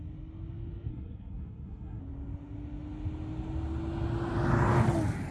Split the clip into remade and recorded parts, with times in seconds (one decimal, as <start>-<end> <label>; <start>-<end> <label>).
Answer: 0.0-0.9 recorded; 0.9-2.0 remade; 2.0-5.3 recorded